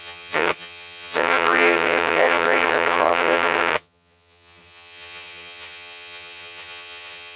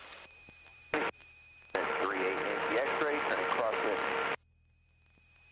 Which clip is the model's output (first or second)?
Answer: first